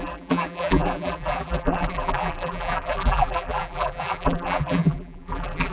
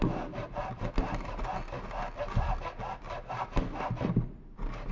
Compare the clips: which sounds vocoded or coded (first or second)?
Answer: first